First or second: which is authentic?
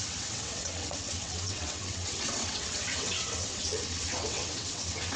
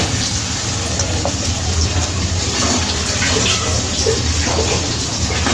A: second